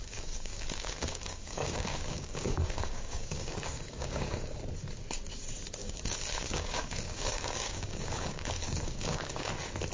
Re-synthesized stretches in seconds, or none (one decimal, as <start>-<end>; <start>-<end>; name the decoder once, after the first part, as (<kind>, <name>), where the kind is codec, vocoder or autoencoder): 0.0-4.6 (codec, DAC); 5.8-9.5